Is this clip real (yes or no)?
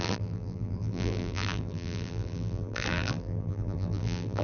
no